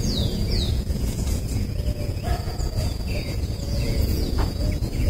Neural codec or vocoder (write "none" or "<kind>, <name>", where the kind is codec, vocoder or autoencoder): vocoder, Vocos